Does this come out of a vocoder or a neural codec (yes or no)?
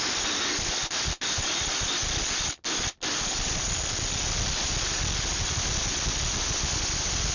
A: no